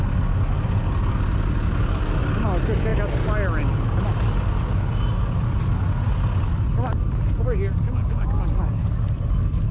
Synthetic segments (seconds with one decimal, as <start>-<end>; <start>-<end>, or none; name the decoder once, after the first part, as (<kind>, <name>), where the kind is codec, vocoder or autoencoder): none